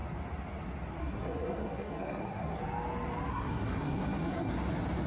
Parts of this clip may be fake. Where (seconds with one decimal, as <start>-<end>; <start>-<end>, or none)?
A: 1.0-2.6; 3.3-4.5